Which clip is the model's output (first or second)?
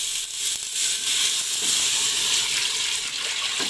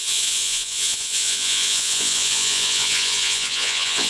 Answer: second